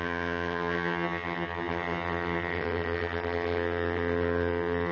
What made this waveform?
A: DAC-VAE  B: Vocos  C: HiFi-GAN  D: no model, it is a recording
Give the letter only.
C